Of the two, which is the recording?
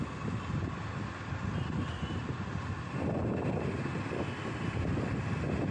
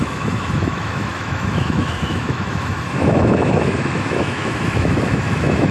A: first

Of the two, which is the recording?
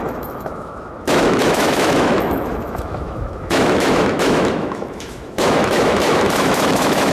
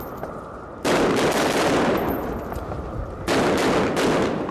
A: second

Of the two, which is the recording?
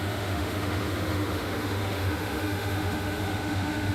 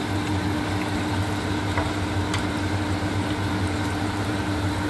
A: second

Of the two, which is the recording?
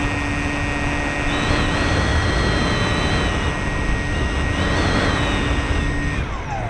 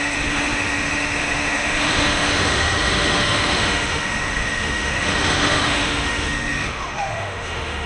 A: first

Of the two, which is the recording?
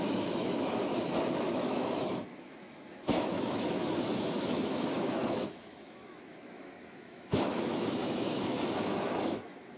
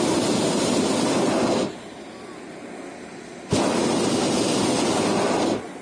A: second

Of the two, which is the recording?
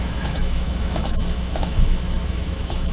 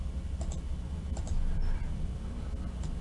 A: second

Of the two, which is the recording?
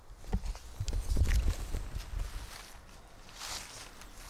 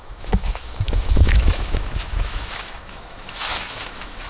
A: first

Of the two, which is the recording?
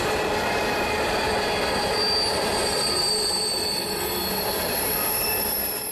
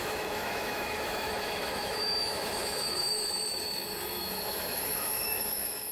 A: first